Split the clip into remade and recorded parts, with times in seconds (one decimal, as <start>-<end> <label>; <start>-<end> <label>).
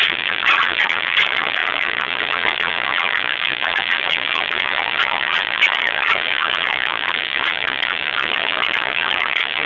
0.0-9.7 remade